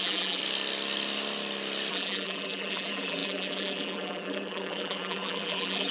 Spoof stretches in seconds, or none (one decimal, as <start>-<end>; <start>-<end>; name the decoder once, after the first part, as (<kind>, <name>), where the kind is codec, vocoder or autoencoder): 0.0-0.4 (vocoder, BigVGAN v2); 1.9-5.9